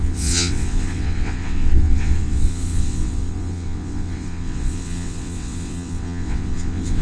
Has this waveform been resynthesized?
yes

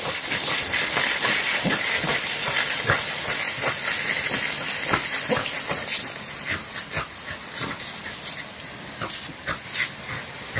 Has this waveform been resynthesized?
no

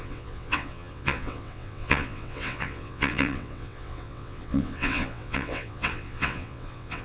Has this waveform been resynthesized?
yes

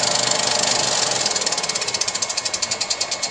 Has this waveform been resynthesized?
no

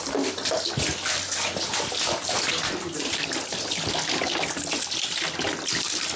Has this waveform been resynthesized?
no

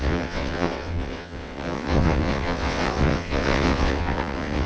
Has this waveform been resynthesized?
yes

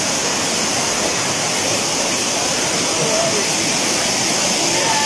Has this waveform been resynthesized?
no